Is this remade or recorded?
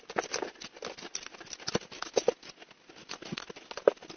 recorded